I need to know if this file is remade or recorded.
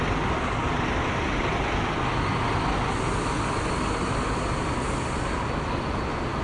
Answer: recorded